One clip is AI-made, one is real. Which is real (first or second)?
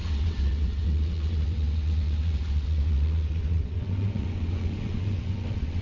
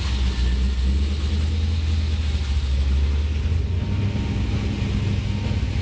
second